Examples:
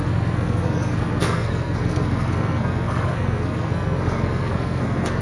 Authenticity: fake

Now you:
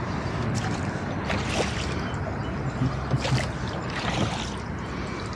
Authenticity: fake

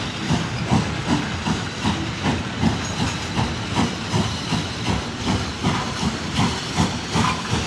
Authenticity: real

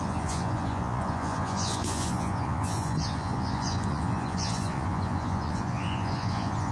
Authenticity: fake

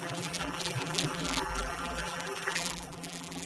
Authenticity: fake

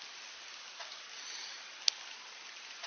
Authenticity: real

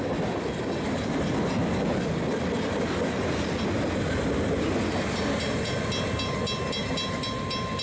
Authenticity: real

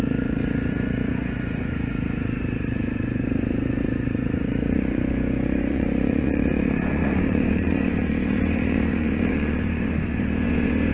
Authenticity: fake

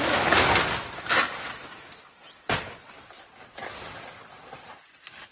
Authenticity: real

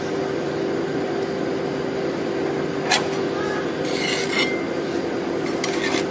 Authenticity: real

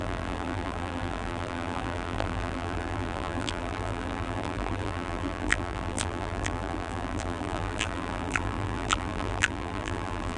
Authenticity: fake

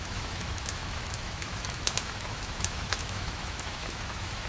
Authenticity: fake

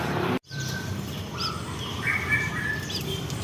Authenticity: fake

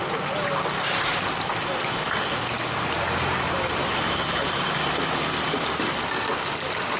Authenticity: real